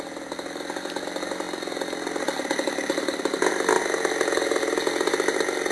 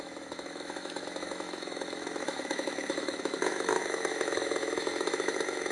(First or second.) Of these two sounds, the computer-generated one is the second